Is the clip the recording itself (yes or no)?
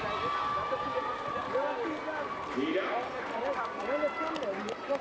yes